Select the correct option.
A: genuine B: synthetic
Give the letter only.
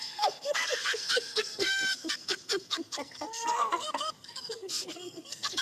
B